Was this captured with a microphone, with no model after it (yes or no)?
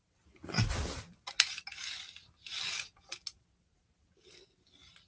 yes